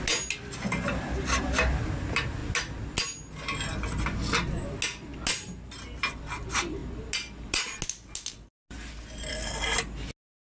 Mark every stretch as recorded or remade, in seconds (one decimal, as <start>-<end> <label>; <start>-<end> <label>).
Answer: 0.0-10.4 recorded

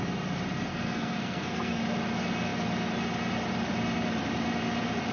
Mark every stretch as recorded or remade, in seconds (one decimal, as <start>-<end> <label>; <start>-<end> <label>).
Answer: 0.0-0.7 recorded; 0.7-1.8 remade; 1.8-5.1 recorded

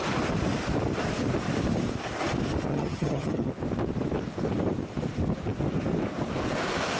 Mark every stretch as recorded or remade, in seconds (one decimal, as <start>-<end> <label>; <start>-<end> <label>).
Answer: 0.0-2.7 recorded; 2.7-3.5 remade; 3.5-7.0 recorded

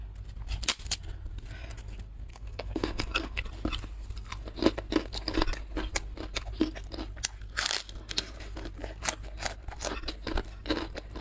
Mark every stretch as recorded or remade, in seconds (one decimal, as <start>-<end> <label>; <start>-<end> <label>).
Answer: 0.0-2.3 recorded; 2.3-3.4 remade; 3.4-11.2 recorded

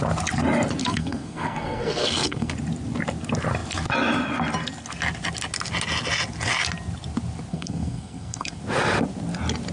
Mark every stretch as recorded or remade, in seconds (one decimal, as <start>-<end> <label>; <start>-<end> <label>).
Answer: 0.0-0.8 recorded; 0.8-2.5 remade; 2.5-7.5 recorded; 7.5-8.6 remade; 8.6-9.7 recorded

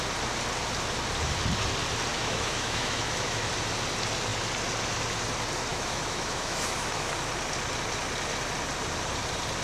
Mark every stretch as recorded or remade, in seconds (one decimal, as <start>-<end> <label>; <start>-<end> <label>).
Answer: 0.0-2.1 recorded; 2.1-3.5 remade; 3.5-5.7 recorded; 5.7-7.1 remade; 7.1-9.6 recorded

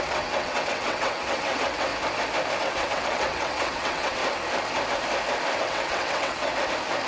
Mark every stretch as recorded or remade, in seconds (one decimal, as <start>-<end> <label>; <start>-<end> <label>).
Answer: 0.0-1.9 remade; 1.9-2.6 recorded; 2.6-4.2 remade; 4.2-5.6 recorded; 5.6-6.5 remade; 6.5-7.1 recorded

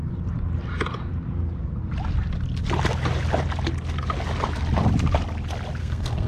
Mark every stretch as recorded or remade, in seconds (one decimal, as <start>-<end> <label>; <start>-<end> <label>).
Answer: 0.0-5.8 recorded; 5.8-6.3 remade